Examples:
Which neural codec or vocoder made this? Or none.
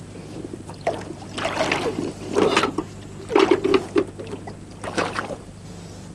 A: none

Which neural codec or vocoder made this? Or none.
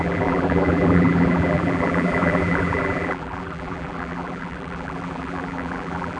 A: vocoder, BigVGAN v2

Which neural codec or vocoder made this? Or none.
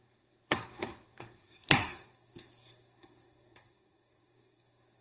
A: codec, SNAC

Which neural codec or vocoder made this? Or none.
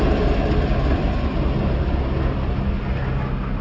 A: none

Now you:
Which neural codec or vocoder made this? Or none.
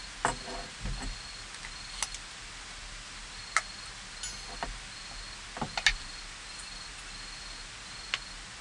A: none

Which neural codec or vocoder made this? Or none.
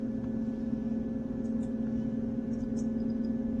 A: none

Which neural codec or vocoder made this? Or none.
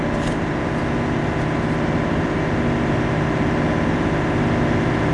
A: none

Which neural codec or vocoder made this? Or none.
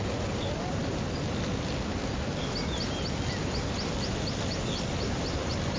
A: none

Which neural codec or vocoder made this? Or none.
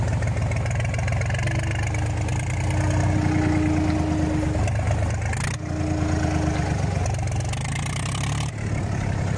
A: none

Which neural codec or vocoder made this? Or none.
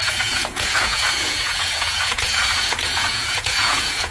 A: vocoder, Vocos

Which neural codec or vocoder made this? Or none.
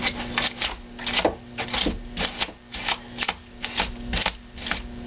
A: none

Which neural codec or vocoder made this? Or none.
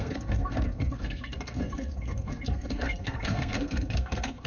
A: codec, SNAC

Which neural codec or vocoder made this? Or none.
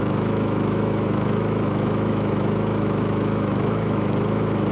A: autoencoder, DAC-VAE